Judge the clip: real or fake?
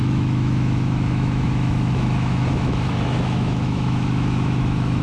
fake